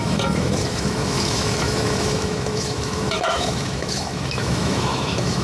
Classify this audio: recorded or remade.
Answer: remade